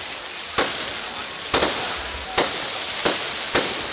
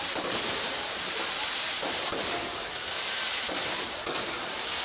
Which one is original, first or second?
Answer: first